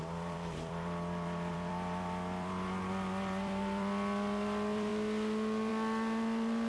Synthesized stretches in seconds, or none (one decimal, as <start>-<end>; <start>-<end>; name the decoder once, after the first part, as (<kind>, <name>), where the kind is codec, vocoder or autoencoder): 0.0-4.9 (vocoder, BigVGAN v2); 5.7-6.7